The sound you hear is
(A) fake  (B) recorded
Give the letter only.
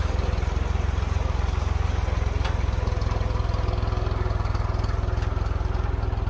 B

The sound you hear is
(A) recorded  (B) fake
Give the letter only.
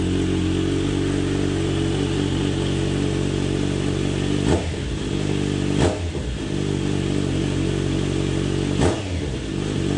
A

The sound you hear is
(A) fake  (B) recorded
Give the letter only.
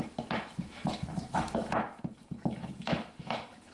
A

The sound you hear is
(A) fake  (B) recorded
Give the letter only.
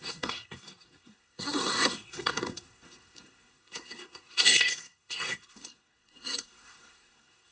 A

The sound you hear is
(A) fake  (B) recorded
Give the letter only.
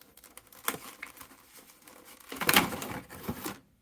B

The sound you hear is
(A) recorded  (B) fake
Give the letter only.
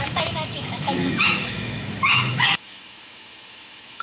B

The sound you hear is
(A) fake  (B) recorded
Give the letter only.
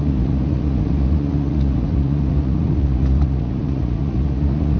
A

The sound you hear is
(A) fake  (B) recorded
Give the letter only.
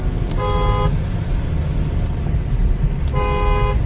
B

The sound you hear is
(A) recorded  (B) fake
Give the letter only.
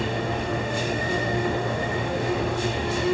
B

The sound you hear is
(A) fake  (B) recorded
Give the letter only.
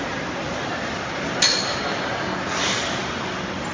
B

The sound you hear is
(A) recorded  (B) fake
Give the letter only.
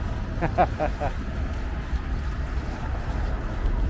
A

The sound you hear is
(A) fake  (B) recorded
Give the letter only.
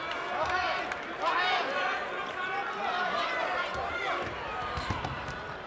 B